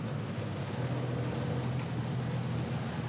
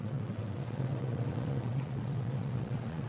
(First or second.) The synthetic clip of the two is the second